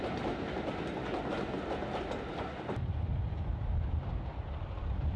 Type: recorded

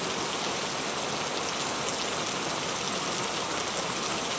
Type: recorded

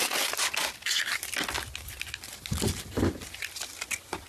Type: recorded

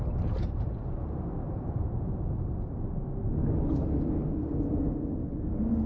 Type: recorded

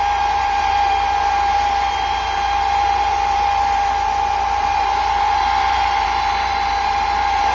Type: remade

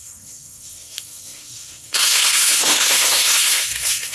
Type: remade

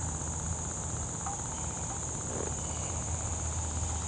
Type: recorded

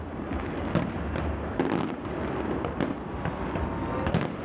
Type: recorded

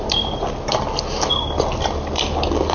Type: recorded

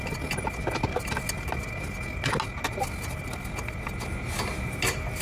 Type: recorded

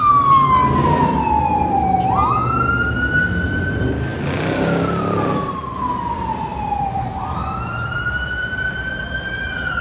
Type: recorded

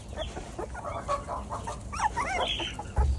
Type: recorded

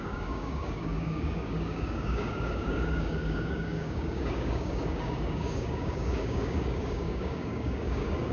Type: remade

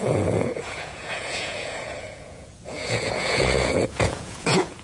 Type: remade